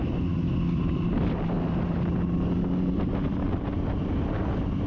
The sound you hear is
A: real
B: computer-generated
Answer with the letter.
A